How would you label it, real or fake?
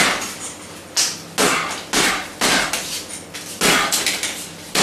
real